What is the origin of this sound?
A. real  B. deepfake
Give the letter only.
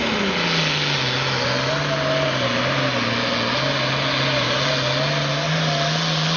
A